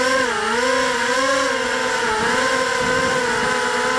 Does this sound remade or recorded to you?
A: recorded